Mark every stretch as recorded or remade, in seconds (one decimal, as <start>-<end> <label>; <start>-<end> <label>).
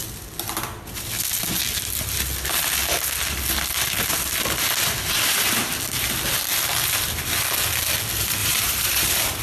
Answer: 0.0-8.4 recorded; 8.4-9.4 remade